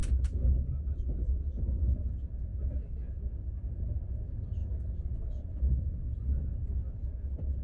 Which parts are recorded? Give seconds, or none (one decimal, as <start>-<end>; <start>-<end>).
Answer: 0.0-7.6